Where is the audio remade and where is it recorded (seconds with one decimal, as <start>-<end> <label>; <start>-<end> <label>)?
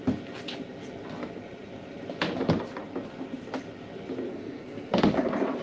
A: 0.0-4.3 recorded; 4.3-5.0 remade; 5.0-5.6 recorded